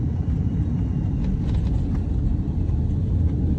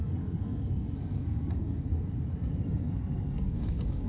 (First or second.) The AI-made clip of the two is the second